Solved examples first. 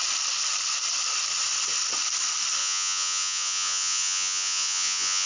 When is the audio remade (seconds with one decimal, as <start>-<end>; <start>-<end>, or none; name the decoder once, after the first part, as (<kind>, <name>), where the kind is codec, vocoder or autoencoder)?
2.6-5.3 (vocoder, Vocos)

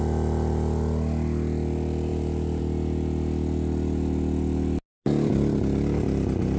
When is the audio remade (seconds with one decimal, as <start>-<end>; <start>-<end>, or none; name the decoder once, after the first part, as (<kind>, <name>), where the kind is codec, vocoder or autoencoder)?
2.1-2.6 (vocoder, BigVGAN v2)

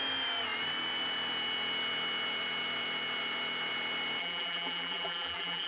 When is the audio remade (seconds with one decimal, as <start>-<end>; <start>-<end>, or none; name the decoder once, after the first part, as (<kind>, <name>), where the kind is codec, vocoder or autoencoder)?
4.2-5.7 (vocoder, BigVGAN v2)

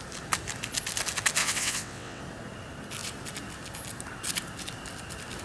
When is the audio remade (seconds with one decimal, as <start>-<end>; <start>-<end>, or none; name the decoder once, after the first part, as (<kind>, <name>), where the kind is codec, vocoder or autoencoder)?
1.4-2.2 (vocoder, WaveNeXt)

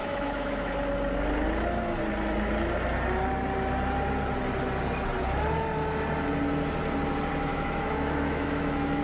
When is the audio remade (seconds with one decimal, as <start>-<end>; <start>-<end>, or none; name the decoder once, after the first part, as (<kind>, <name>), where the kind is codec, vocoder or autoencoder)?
0.0-0.7 (autoencoder, DAC-VAE); 7.5-9.0